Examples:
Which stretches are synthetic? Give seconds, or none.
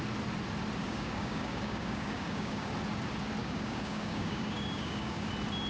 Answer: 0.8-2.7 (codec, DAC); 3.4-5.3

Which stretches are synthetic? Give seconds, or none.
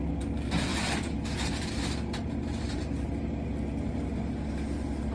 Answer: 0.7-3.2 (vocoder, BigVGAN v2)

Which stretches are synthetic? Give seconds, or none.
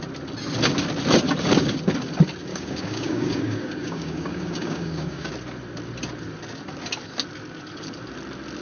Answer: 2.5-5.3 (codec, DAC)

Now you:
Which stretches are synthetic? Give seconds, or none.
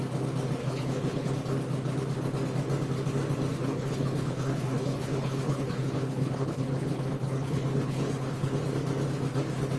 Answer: 0.6-1.3 (codec, HILCodec); 3.5-8.6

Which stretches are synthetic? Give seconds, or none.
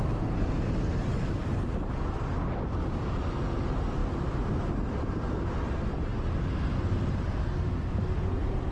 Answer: 6.1-7.2 (vocoder, BigVGAN v2)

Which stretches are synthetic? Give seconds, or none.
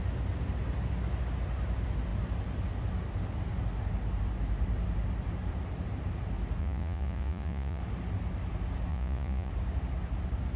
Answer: 6.6-7.8 (vocoder, Vocos); 8.9-9.5